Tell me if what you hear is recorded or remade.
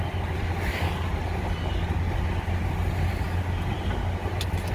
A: recorded